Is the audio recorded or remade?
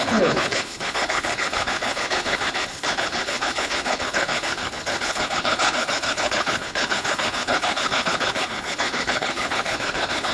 remade